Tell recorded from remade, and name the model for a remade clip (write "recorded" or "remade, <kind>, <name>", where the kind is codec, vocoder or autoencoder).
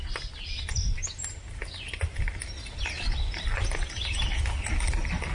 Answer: recorded